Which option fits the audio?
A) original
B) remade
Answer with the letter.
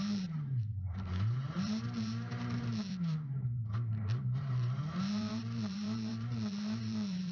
B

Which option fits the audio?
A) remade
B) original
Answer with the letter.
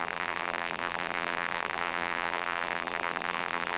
A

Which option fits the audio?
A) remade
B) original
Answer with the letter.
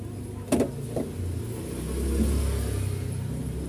B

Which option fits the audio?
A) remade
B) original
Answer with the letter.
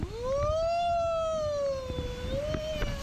B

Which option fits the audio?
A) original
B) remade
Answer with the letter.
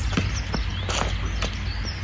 A